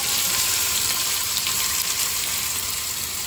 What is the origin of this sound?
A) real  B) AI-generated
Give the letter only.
B